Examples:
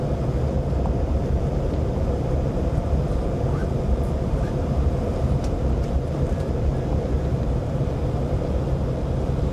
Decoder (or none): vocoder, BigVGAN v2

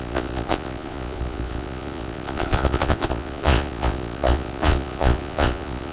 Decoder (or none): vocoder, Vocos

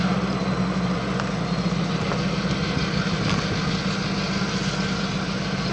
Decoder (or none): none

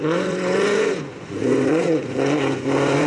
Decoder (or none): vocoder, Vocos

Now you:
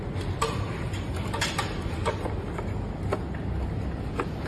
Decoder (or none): none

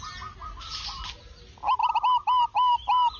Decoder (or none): none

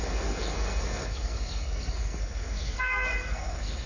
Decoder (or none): codec, SNAC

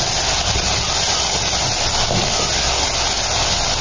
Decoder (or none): none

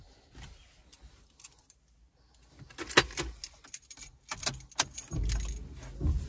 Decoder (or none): none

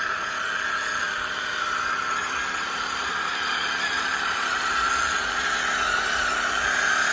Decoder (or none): none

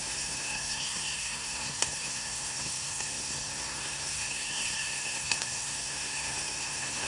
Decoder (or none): codec, SNAC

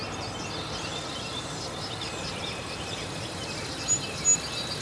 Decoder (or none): none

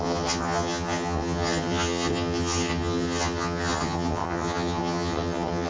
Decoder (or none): vocoder, HiFi-GAN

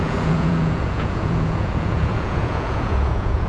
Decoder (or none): vocoder, Vocos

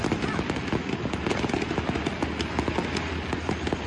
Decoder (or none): none